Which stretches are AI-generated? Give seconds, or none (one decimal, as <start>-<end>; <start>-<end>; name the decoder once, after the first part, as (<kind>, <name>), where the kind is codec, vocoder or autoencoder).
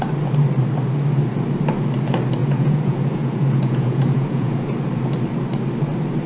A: 2.4-4.7 (vocoder, Vocos)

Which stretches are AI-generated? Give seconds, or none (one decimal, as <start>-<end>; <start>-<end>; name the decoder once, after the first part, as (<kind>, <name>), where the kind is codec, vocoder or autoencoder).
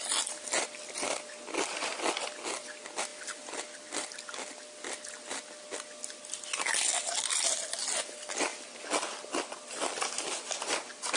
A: none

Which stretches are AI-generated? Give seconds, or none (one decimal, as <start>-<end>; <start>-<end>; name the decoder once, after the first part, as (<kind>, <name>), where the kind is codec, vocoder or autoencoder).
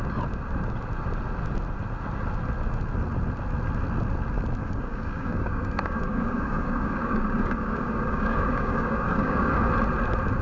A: 4.6-9.7 (codec, DAC)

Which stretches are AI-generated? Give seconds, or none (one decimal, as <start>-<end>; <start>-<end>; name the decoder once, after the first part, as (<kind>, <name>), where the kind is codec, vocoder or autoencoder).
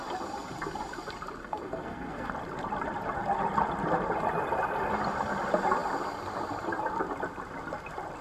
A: 1.4-2.3 (codec, SNAC)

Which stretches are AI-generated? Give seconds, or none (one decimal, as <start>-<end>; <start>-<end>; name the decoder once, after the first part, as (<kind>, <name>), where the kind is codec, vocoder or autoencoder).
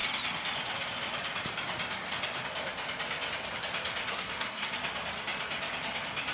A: 4.0-4.7 (codec, SNAC)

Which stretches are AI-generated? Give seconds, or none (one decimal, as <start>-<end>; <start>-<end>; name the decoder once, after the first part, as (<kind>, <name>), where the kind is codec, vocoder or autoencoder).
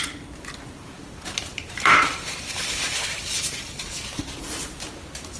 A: 1.6-3.9 (vocoder, BigVGAN v2)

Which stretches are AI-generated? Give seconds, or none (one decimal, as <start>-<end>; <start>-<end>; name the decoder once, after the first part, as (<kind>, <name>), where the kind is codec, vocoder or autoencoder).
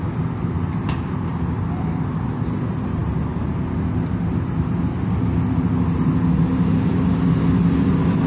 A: none